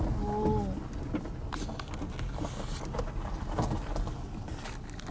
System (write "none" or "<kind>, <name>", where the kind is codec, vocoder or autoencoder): none